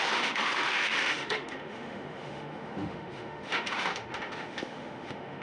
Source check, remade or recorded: remade